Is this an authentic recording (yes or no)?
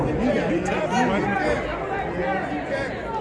yes